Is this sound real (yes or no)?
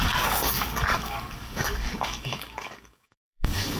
no